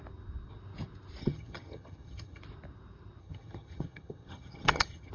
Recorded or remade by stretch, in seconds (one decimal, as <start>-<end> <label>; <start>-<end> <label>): 0.0-1.2 recorded; 1.2-2.4 remade; 2.4-3.2 recorded; 3.2-5.1 remade